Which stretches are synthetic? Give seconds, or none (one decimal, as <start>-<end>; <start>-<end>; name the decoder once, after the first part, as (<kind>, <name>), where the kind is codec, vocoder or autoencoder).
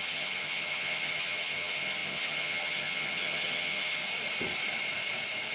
0.0-4.0 (vocoder, HiFi-GAN)